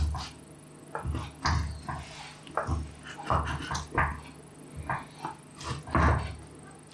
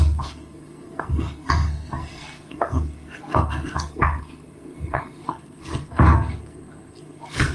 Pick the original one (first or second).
first